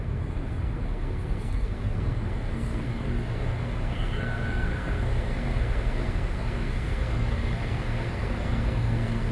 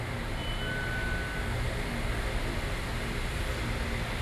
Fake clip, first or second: first